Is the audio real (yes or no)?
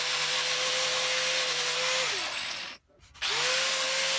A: yes